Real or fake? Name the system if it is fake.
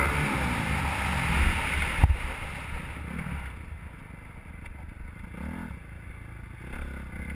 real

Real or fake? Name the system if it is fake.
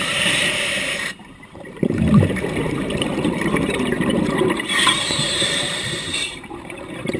fake, vocoder, BigVGAN v2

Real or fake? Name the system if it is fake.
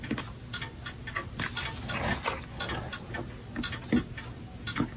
real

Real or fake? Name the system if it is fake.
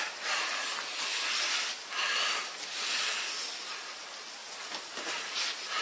fake, vocoder, BigVGAN v2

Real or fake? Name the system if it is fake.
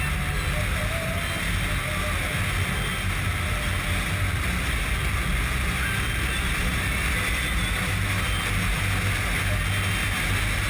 real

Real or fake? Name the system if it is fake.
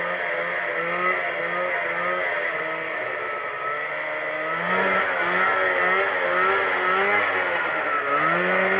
real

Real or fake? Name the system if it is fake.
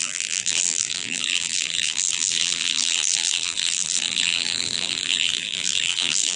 fake, vocoder, BigVGAN v2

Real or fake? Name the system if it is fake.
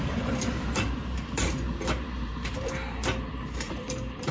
fake, vocoder, BigVGAN v2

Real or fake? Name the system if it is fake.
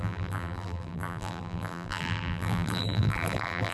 fake, vocoder, BigVGAN v2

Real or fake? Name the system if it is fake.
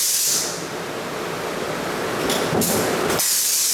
real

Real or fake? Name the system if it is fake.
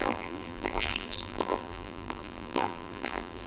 fake, vocoder, BigVGAN v2